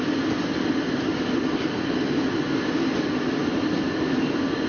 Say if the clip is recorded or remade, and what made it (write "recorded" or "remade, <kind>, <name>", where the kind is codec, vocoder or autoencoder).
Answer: recorded